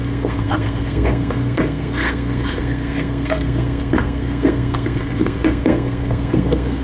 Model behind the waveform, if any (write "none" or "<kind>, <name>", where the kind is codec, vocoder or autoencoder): codec, SNAC